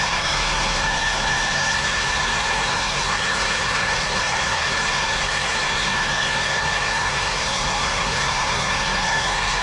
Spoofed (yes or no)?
yes